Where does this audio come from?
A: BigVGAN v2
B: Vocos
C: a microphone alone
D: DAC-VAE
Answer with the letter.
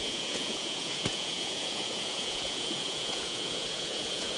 B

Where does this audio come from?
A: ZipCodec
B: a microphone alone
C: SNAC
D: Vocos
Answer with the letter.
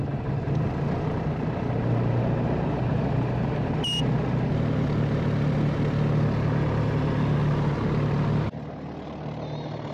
B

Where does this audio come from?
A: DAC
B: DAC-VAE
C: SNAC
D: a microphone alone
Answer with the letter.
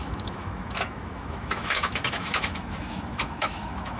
B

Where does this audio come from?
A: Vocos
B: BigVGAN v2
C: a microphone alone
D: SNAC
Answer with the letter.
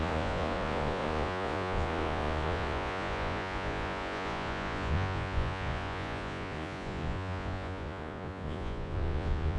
A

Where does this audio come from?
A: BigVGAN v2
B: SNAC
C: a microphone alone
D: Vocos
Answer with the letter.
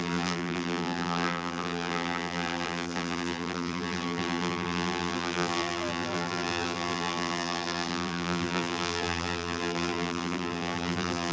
A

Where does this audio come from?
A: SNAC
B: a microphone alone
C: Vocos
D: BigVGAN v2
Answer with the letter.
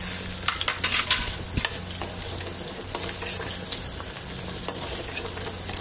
B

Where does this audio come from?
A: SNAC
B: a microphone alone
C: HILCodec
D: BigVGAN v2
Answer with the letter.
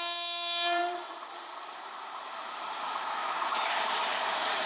D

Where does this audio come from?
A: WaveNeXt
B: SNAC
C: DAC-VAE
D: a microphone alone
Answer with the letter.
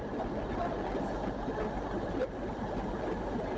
D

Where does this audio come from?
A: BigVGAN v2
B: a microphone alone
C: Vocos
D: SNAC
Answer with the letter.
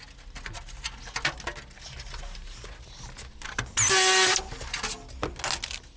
B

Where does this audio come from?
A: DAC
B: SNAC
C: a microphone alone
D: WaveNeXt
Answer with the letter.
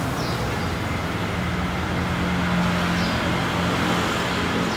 C